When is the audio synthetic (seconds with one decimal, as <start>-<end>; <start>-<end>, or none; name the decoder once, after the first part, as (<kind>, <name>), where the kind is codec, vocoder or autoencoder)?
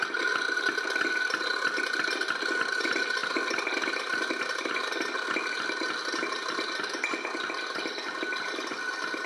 none